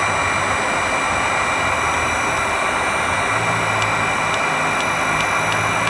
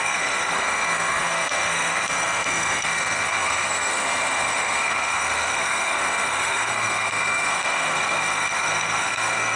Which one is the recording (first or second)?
first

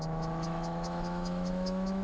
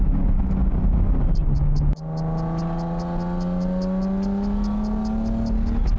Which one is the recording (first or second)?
second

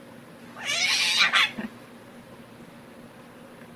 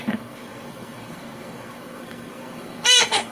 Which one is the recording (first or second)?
first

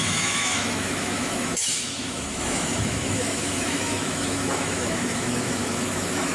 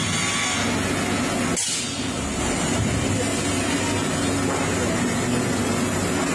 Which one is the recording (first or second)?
second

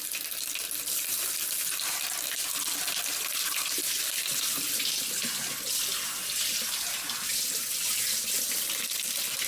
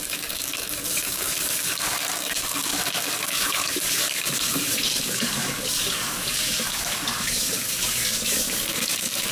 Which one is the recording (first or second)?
first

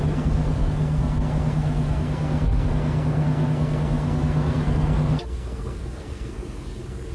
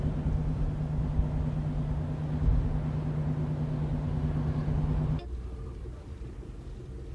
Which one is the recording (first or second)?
second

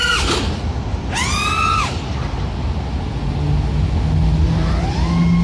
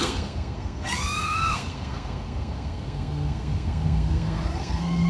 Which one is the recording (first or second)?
first